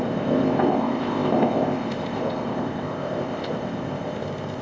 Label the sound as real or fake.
fake